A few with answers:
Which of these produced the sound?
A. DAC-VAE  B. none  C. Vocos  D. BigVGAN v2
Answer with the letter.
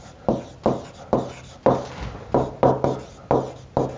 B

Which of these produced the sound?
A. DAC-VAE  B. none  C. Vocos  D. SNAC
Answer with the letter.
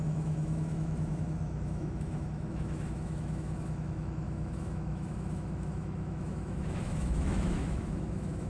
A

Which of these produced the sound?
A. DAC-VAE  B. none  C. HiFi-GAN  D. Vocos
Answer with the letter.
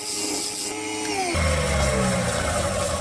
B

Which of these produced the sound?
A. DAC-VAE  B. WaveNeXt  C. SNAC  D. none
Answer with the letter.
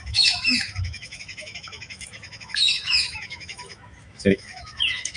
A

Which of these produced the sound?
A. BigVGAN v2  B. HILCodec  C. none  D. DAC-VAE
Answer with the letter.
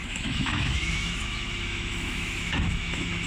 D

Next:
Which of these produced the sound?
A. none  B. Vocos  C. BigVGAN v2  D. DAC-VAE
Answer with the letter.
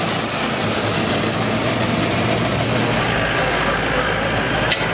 A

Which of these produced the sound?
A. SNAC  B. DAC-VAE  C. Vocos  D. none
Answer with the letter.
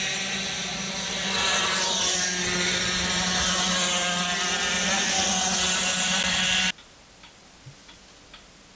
D